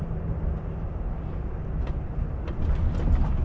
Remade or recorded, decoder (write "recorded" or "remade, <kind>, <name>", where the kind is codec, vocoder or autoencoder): recorded